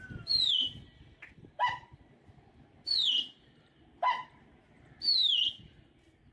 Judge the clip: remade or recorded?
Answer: recorded